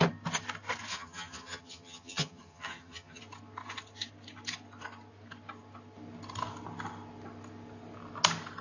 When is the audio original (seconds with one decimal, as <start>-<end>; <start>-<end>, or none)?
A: 0.0-0.9; 3.2-8.6